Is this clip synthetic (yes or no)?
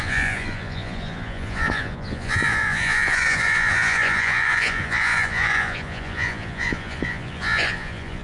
yes